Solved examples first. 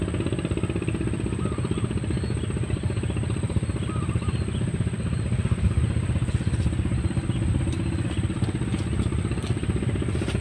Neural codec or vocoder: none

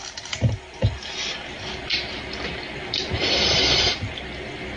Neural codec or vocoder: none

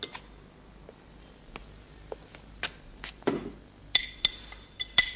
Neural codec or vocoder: none